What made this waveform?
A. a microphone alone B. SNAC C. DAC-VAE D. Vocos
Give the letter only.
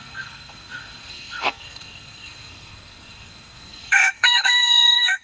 B